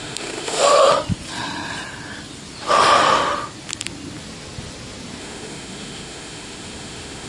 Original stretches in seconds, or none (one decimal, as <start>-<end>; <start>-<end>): 0.9-5.2